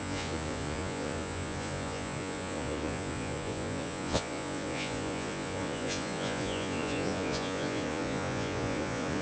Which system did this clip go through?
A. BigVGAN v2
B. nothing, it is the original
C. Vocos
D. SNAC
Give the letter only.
C